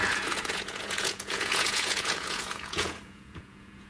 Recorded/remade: remade